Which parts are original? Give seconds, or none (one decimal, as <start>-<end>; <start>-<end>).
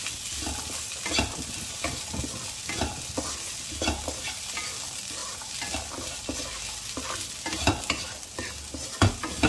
0.0-9.5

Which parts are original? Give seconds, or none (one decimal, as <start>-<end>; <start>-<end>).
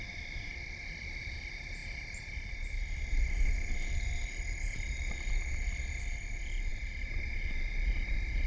0.5-1.2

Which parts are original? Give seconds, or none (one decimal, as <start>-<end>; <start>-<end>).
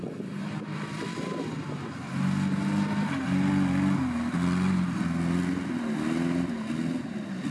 0.0-0.4; 1.0-7.5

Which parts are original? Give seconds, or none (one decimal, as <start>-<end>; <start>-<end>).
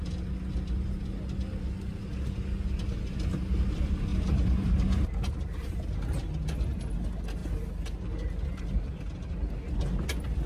0.0-4.1; 5.7-10.5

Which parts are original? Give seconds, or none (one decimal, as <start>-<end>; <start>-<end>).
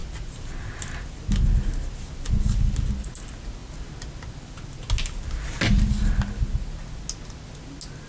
0.0-8.1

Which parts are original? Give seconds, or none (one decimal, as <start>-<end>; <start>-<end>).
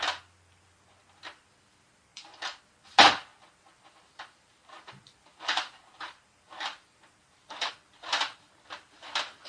0.0-2.1; 2.6-3.3; 7.7-9.5